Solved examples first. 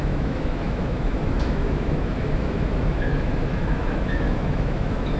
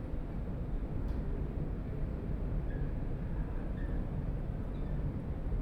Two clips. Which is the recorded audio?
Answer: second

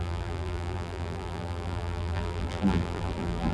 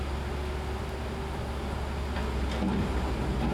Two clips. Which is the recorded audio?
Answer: second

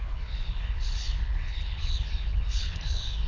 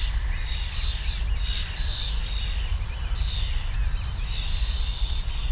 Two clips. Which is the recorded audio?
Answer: second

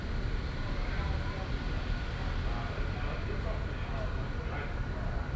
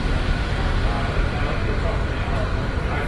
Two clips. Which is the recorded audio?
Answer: first